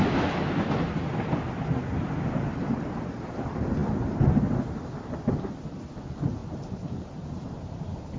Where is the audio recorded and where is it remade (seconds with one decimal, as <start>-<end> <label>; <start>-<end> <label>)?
0.0-6.4 recorded; 6.4-8.2 remade